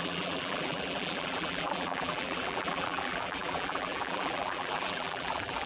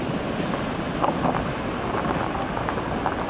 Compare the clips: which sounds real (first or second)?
second